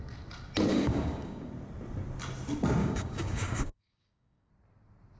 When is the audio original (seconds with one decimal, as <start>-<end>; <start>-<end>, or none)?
0.0-0.7; 1.5-2.8; 4.5-5.2